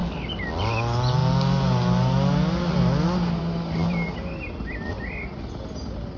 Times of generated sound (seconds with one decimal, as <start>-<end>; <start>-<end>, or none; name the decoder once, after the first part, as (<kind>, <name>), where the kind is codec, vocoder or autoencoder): none